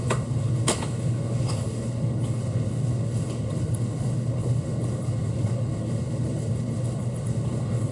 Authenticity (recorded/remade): remade